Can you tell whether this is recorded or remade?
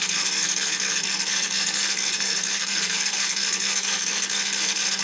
remade